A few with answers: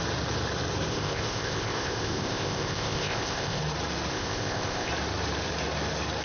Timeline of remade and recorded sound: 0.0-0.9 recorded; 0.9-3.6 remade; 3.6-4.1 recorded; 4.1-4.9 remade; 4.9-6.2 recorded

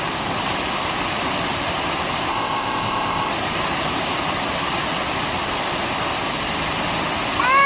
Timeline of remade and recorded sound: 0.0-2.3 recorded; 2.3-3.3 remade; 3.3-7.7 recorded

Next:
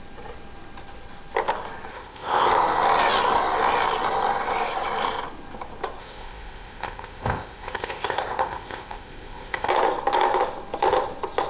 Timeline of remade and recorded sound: 0.0-1.9 recorded; 1.9-2.5 remade; 2.5-6.0 recorded; 6.0-9.7 remade; 9.7-11.5 recorded

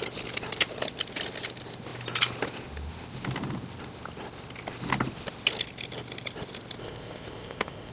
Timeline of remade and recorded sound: 0.0-6.8 recorded; 6.8-7.9 remade

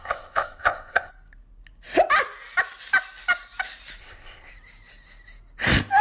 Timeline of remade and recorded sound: 0.0-1.1 remade; 1.1-4.0 recorded; 4.0-4.5 remade; 4.5-6.0 recorded

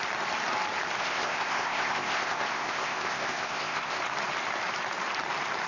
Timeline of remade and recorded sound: 0.0-1.0 recorded; 1.0-4.0 remade; 4.0-5.7 recorded